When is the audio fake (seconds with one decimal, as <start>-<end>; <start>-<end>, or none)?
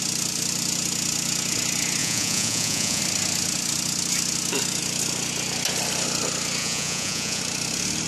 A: 2.0-3.0; 6.6-7.4